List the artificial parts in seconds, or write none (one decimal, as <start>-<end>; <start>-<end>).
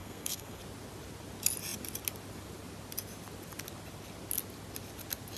0.0-0.6